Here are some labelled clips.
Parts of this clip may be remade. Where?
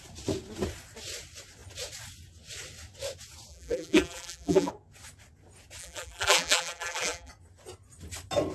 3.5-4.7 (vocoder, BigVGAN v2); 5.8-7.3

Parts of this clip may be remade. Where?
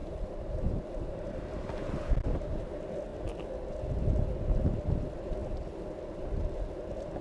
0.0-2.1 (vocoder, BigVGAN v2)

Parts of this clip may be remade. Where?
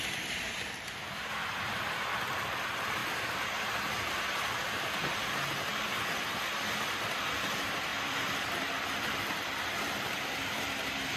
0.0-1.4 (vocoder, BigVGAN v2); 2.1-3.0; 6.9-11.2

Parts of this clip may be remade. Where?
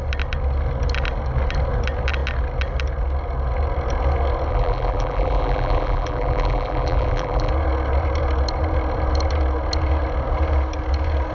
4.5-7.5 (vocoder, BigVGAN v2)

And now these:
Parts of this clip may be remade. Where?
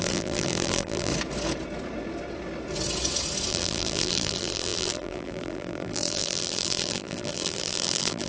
0.0-1.1 (vocoder, BigVGAN v2); 3.5-8.3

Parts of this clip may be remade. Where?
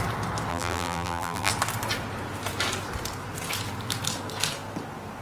0.5-1.5 (vocoder, BigVGAN v2)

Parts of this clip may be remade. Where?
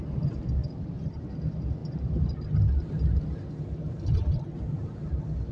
none